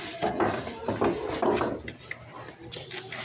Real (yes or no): yes